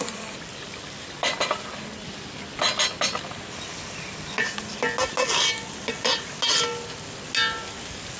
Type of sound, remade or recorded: recorded